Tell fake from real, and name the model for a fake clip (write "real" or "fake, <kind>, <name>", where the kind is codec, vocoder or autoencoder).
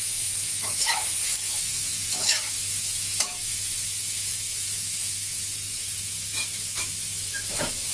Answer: fake, autoencoder, DAC-VAE